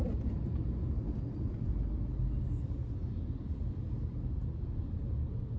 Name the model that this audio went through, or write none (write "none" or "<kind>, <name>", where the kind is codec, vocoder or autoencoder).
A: none